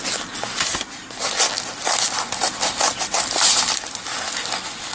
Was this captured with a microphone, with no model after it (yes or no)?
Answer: yes